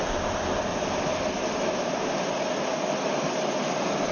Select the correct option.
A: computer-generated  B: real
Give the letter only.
B